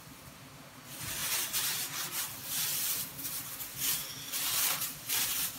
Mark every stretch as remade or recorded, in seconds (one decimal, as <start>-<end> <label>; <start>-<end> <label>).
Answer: 0.0-5.6 recorded